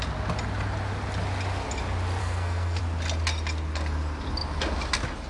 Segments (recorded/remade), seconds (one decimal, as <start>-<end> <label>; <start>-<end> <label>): 0.0-2.2 recorded; 2.2-2.8 remade; 2.8-5.3 recorded